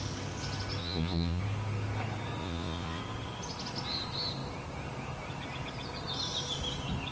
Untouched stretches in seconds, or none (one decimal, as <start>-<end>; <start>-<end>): 0.0-0.8; 1.4-2.4; 3.0-7.1